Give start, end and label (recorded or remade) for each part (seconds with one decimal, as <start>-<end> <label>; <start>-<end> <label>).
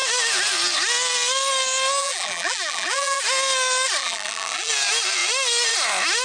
0.0-2.0 recorded; 2.0-3.2 remade; 3.2-4.0 recorded; 4.0-4.7 remade; 4.7-6.2 recorded